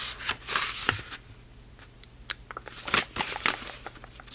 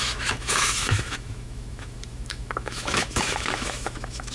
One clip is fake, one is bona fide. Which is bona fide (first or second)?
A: first